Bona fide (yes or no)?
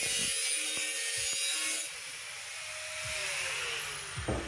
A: yes